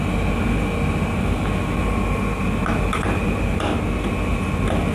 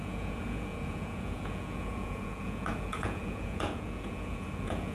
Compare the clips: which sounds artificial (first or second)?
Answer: second